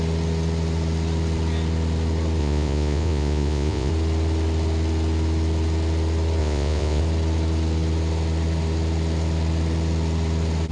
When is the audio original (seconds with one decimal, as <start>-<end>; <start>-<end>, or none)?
0.0-2.4; 3.9-6.4; 7.0-10.7